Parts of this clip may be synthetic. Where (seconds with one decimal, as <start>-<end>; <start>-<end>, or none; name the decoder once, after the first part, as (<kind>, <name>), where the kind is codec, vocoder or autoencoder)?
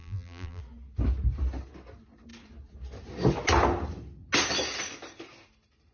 0.0-0.6 (vocoder, BigVGAN v2)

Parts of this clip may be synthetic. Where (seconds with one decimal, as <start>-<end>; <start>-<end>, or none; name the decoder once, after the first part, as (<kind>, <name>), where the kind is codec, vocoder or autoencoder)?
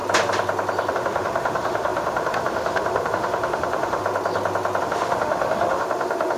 0.9-4.0 (autoencoder, DAC-VAE); 4.8-6.4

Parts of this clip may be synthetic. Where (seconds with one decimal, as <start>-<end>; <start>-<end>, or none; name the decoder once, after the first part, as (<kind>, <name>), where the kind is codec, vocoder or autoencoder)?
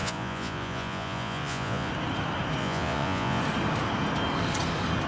0.0-1.9 (vocoder, Vocos); 2.6-3.4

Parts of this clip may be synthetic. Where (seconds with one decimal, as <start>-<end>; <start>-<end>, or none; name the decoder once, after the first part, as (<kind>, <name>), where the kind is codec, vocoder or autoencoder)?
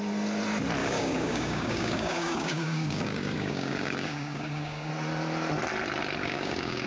0.8-4.9 (codec, DAC); 6.2-6.9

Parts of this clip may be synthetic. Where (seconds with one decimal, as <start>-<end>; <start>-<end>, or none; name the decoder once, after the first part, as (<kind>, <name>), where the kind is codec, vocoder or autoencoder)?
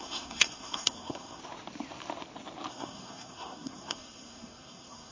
0.0-1.4 (codec, SNAC); 2.7-5.1